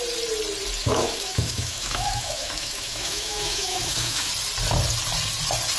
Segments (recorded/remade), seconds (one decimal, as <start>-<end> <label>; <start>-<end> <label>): 0.0-0.8 recorded; 0.8-4.3 remade; 4.3-5.8 recorded